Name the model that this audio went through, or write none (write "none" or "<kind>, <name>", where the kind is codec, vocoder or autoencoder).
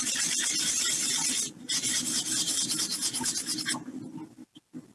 none